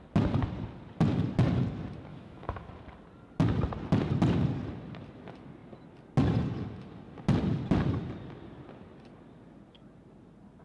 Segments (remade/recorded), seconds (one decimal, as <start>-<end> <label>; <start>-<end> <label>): 0.0-2.1 recorded; 2.1-2.7 remade; 2.7-10.6 recorded